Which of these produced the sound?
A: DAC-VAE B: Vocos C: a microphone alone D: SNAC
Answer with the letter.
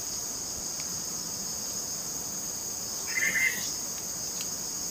C